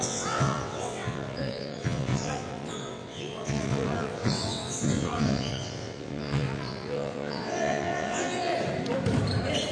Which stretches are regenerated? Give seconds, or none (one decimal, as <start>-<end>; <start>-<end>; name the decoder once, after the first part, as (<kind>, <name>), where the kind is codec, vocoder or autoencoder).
0.0-8.5 (vocoder, WaveNeXt)